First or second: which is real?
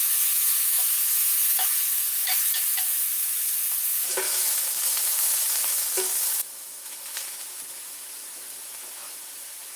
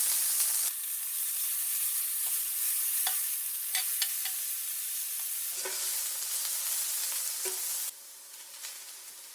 second